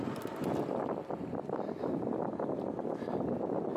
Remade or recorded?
recorded